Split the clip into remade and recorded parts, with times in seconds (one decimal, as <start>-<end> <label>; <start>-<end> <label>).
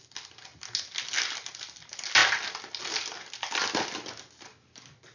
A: 0.0-5.1 recorded